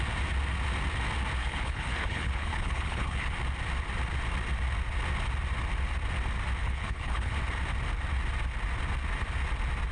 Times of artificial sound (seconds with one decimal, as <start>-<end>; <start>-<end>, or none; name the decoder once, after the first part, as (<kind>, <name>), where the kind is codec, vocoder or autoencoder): 1.4-3.3 (codec, HILCodec); 6.6-7.3